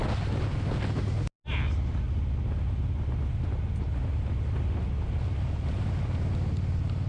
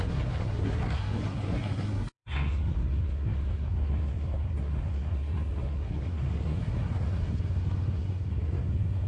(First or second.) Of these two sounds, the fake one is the second